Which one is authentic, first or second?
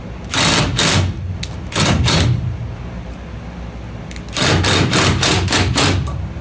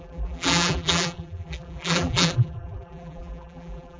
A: first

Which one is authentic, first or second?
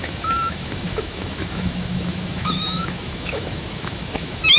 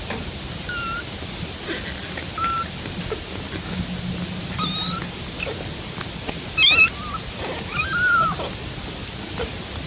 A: second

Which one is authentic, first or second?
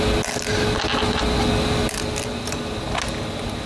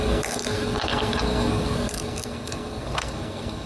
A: first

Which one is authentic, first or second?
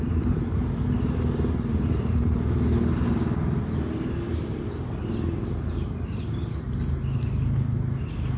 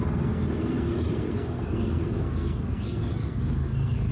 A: first